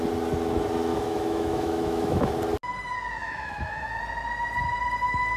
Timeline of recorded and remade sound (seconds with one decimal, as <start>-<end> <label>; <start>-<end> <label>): 0.0-0.9 recorded; 0.9-2.3 remade; 2.3-3.2 recorded; 3.2-4.0 remade; 4.0-5.4 recorded